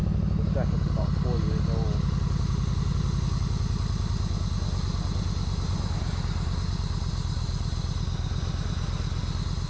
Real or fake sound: real